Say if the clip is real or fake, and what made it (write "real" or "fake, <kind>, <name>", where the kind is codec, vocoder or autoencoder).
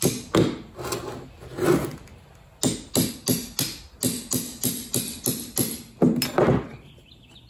real